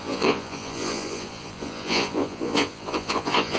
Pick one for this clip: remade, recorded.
remade